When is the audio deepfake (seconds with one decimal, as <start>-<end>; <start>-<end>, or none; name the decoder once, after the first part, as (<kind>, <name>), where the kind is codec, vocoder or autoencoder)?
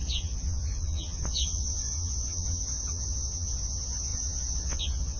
0.0-5.2 (vocoder, Vocos)